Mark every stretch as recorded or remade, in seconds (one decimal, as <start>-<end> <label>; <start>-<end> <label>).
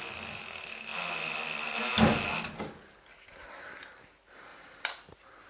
0.0-5.5 recorded